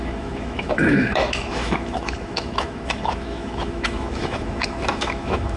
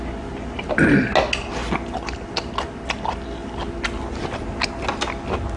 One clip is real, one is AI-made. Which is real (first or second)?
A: second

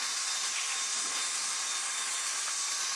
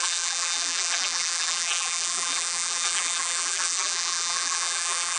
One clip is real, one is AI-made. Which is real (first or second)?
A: first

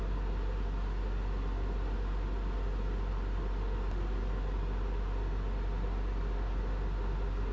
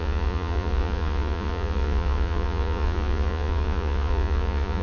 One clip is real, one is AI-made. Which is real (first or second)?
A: first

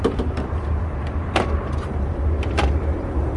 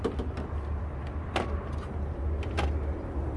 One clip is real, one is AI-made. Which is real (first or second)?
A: second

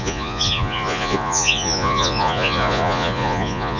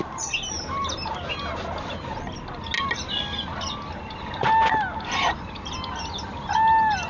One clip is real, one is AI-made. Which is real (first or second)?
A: second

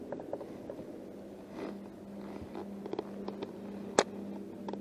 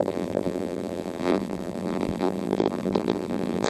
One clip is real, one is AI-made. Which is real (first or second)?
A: first